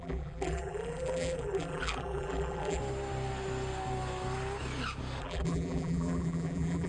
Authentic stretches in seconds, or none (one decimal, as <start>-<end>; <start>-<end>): 2.8-5.2